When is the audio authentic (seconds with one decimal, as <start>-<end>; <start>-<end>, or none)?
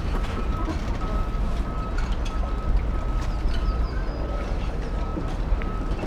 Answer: 0.5-3.1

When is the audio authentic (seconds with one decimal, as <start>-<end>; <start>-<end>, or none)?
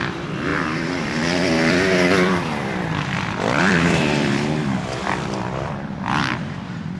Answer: none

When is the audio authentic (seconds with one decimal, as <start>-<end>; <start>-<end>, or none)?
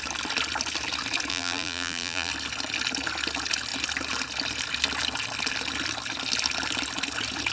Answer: 0.0-1.3; 2.3-7.5